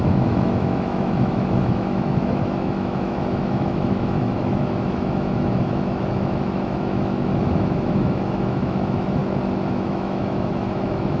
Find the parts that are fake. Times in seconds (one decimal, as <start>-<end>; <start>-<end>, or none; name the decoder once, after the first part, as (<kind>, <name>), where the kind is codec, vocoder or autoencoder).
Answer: 0.0-9.2 (autoencoder, DAC-VAE); 9.7-11.2